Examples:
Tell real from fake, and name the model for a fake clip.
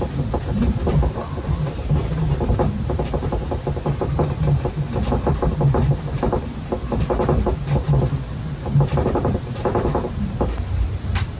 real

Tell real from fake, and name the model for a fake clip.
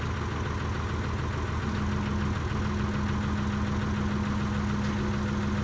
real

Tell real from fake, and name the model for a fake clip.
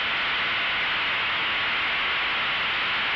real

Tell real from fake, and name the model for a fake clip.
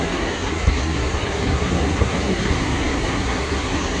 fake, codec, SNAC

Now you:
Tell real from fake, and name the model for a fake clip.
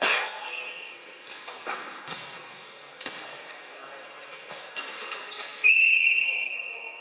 fake, codec, SNAC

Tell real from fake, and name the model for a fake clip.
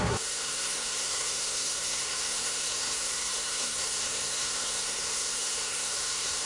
fake, codec, SNAC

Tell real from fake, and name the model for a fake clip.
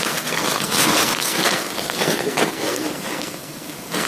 fake, codec, SNAC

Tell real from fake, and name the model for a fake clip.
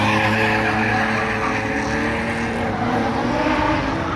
real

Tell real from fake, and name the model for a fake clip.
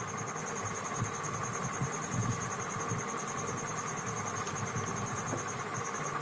real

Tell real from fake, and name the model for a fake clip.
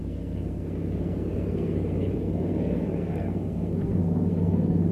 fake, codec, SNAC